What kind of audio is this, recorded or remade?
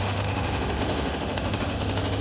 remade